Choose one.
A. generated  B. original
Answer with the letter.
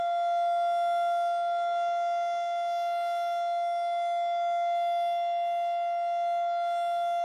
B